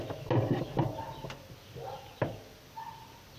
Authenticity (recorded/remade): recorded